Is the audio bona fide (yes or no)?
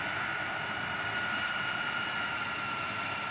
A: yes